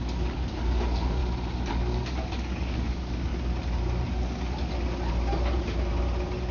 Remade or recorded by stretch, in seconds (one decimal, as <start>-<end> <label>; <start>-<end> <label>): 0.0-1.2 remade; 1.2-1.7 recorded; 1.7-3.3 remade; 3.3-6.5 recorded